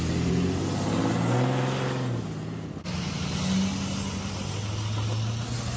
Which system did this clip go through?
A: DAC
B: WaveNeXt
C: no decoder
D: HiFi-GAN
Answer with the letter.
C